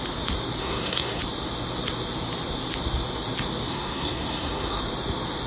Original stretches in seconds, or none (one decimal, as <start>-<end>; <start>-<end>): 0.0-0.6; 1.2-3.7; 4.8-5.5